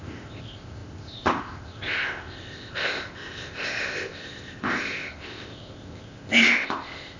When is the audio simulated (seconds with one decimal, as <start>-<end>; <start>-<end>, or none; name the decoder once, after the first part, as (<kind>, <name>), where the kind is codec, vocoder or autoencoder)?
0.0-7.2 (codec, ZipCodec)